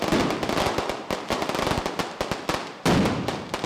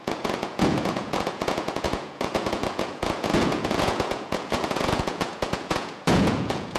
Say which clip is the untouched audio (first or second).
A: first